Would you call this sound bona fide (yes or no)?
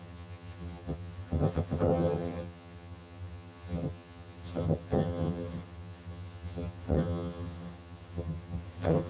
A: no